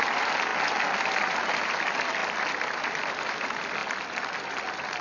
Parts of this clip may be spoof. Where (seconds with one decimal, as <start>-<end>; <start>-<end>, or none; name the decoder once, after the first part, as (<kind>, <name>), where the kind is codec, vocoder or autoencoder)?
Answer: none